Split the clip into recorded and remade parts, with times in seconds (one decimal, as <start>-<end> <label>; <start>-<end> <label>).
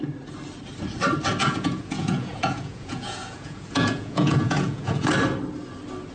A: 0.0-1.4 recorded; 1.4-5.1 remade; 5.1-6.1 recorded